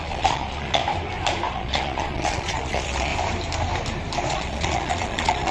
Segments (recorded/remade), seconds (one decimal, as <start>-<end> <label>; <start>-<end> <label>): 0.0-0.8 remade; 0.8-1.5 recorded; 1.5-3.1 remade; 3.1-4.3 recorded; 4.3-5.5 remade